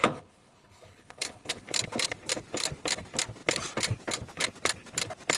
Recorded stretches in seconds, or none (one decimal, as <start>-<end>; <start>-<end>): 1.6-5.4